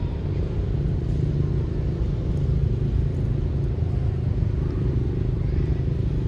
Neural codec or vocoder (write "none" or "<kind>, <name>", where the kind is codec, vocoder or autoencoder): none